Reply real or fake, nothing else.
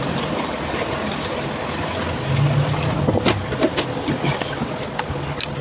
real